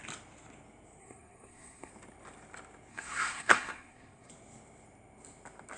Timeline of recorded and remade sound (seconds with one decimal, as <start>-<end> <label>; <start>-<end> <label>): 0.0-1.0 recorded; 1.0-1.9 remade; 1.9-2.9 recorded; 2.9-4.3 remade; 4.3-5.8 recorded